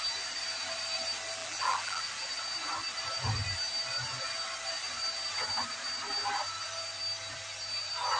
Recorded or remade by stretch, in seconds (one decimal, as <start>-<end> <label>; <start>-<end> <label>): 0.0-1.4 recorded; 1.4-2.0 remade; 2.0-8.2 recorded